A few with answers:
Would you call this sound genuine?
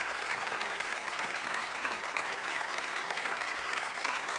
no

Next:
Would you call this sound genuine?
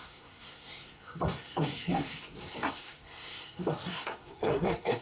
no